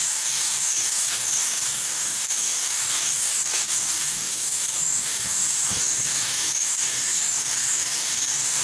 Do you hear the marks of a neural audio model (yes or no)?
yes